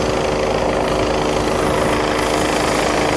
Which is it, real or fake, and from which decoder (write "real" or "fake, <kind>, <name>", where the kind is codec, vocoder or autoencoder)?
real